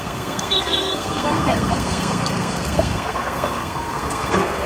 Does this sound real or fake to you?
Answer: fake